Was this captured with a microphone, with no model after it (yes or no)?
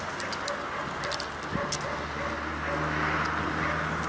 yes